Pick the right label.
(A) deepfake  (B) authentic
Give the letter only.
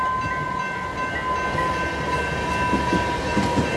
B